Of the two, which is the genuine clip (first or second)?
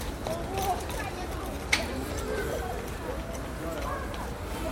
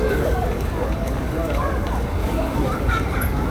first